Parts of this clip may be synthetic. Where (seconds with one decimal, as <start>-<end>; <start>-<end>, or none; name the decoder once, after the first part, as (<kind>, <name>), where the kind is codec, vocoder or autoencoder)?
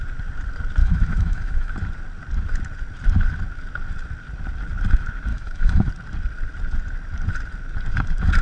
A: 0.8-1.7 (autoencoder, DAC-VAE); 5.3-5.9